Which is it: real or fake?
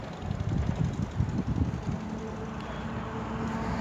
real